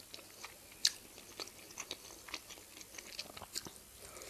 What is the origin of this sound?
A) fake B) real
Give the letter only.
B